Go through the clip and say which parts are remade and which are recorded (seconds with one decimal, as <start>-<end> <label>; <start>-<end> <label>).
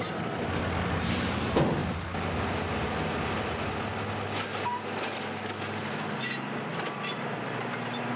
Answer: 0.0-8.2 recorded